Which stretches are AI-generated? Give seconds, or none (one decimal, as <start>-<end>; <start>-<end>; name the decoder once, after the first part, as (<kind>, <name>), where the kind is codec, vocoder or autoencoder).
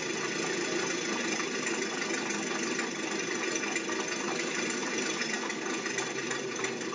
none